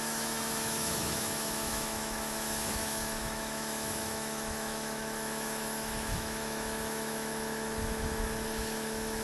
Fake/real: fake